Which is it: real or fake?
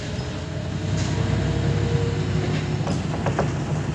real